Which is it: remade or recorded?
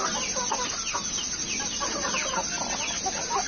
recorded